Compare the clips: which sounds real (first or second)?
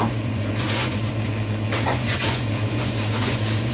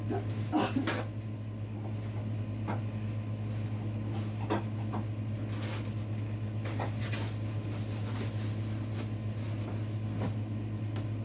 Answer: second